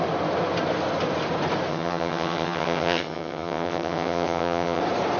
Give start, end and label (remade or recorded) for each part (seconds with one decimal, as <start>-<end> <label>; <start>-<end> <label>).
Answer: 0.0-1.7 recorded; 1.7-4.8 remade; 4.8-5.2 recorded